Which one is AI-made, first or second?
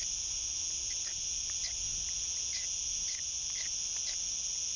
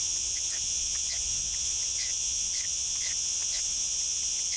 second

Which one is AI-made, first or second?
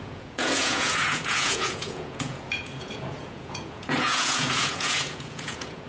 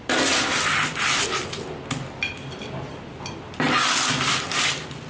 first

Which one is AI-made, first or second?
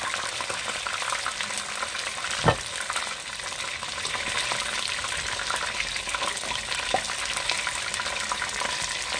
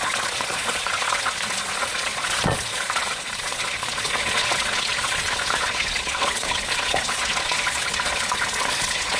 second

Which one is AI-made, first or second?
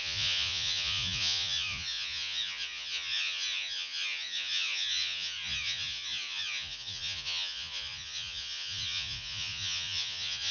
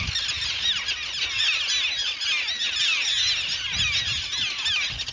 first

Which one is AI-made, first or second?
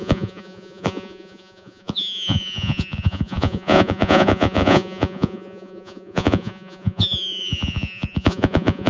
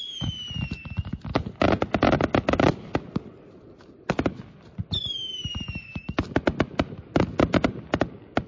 first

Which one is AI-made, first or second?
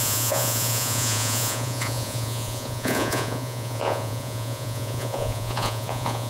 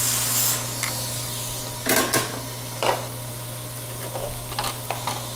first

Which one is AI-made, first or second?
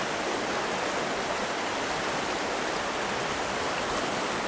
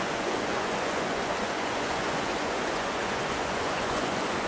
second